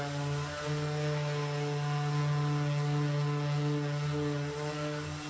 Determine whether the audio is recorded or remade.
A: recorded